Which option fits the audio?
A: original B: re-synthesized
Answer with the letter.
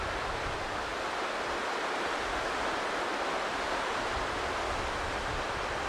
A